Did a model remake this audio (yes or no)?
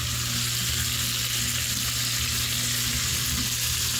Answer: no